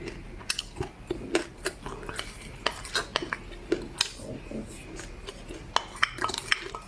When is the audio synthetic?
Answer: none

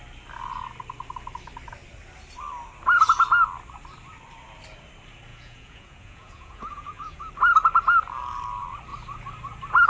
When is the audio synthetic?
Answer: 5.3-7.3 (vocoder, Vocos)

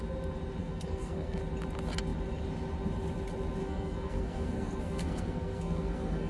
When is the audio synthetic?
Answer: 0.6-1.4 (codec, SNAC); 3.6-6.3

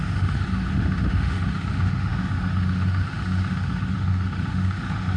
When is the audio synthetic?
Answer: 0.0-5.2 (autoencoder, DAC-VAE)

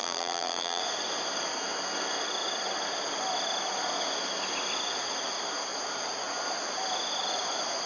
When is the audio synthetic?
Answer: 0.0-0.8 (vocoder, BigVGAN v2)

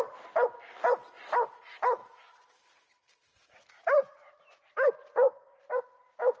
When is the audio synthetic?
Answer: none

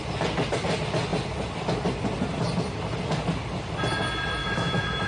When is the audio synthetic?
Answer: 4.4-5.1 (autoencoder, DAC-VAE)

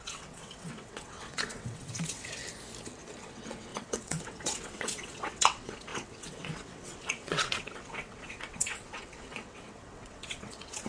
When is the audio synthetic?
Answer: 0.0-2.4 (vocoder, WaveNeXt); 3.2-10.9